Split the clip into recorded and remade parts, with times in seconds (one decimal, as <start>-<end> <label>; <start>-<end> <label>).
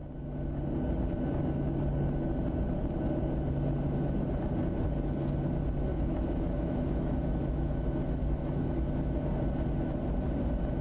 0.0-5.9 recorded; 5.9-8.7 remade; 8.7-10.8 recorded